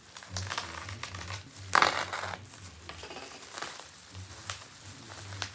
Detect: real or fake real